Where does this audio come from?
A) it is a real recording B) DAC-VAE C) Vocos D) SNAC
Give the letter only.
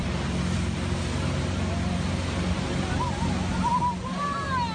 A